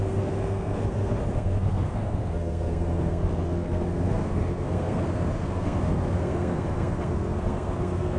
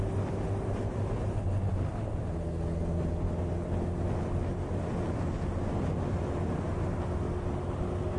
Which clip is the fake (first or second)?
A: first